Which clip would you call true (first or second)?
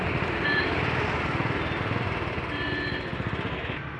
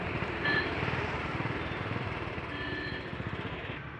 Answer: first